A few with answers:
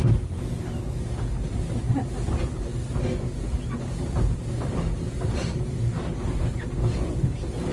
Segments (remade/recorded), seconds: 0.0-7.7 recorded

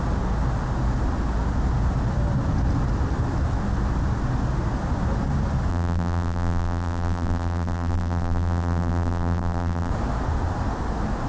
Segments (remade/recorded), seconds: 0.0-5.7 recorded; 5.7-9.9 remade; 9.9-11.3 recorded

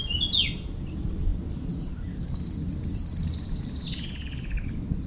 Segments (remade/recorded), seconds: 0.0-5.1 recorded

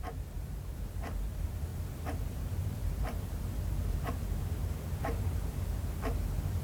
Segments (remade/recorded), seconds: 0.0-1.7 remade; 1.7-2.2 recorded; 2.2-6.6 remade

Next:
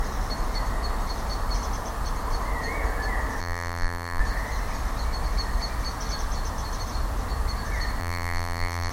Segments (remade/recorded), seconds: 0.0-3.4 recorded; 3.4-4.2 remade; 4.2-8.0 recorded; 8.0-8.9 remade

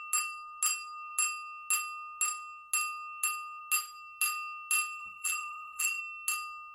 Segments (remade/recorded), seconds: 0.0-5.0 recorded; 5.0-6.0 remade; 6.0-6.7 recorded

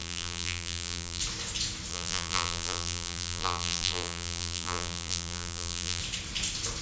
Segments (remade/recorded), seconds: 0.0-1.2 remade; 1.2-1.9 recorded; 1.9-6.0 remade; 6.0-6.8 recorded